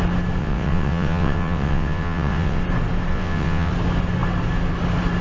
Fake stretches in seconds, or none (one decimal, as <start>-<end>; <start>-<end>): 0.4-2.6; 3.1-3.7